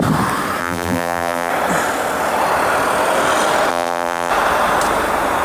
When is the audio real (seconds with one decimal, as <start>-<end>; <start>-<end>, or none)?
0.0-0.6; 1.5-3.7; 4.3-5.4